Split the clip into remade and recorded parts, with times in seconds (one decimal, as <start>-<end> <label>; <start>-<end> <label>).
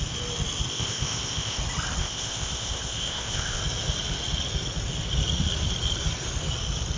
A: 0.0-0.7 recorded; 0.7-1.6 remade; 1.6-2.0 recorded; 2.0-3.6 remade; 3.6-7.0 recorded